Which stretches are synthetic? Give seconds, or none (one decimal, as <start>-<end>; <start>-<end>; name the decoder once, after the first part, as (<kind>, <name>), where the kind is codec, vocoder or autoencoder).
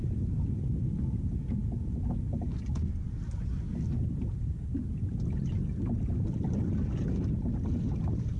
none